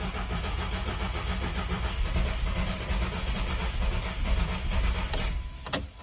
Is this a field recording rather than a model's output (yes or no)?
yes